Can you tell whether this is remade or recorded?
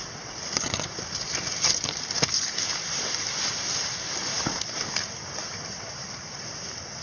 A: recorded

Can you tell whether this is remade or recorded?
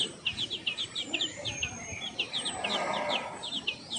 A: remade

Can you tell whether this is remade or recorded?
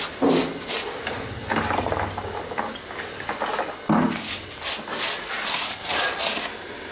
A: recorded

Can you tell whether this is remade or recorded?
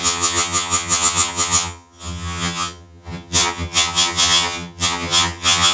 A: remade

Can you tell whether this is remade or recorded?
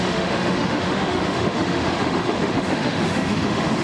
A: remade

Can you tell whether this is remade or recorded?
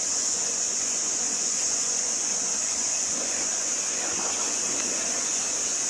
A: remade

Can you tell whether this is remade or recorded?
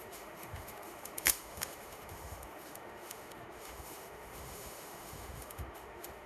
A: remade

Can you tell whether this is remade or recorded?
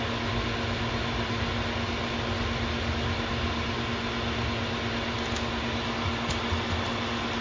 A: recorded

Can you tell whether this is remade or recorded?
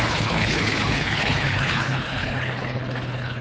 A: remade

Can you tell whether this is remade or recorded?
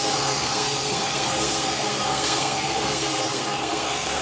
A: remade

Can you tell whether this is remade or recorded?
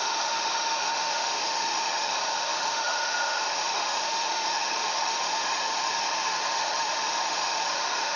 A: remade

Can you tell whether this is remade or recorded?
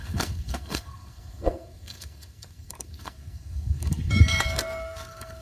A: remade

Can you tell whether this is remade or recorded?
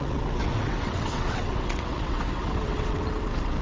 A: remade